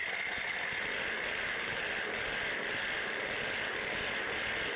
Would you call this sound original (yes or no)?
yes